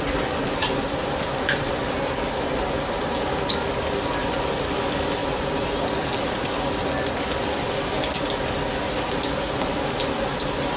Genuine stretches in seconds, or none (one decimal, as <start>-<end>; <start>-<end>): 0.0-0.6; 1.8-5.2; 5.9-10.8